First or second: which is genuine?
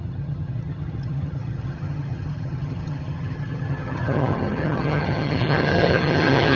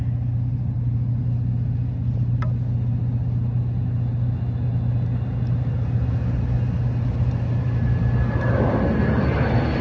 second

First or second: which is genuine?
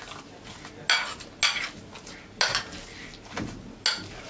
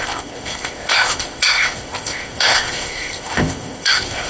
first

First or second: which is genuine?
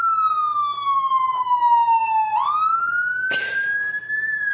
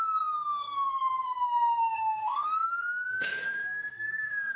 first